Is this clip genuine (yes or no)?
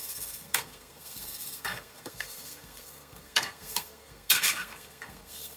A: no